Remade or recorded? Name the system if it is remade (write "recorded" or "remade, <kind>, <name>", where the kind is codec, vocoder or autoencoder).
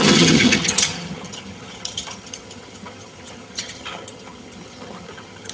remade, vocoder, HiFi-GAN